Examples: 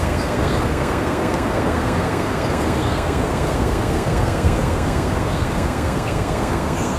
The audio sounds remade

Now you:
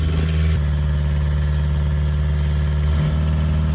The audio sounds recorded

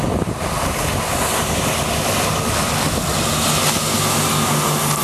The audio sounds recorded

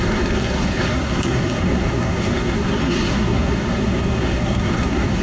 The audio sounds remade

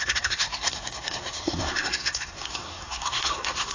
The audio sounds remade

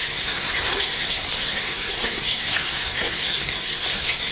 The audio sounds remade